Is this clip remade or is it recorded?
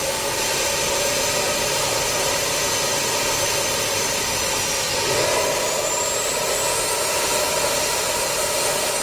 recorded